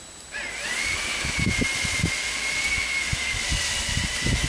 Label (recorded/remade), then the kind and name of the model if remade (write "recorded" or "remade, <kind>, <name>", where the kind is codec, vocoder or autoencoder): recorded